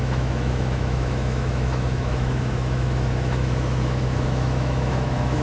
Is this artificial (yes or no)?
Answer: yes